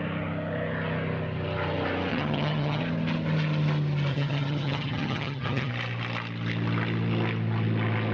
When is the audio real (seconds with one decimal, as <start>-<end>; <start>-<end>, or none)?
0.0-2.1; 2.8-4.1; 5.7-8.1